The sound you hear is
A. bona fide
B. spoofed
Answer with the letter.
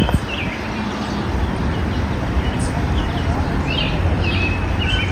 A